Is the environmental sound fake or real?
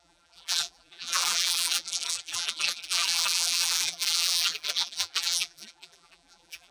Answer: fake